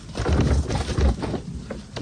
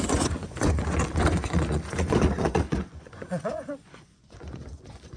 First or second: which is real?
first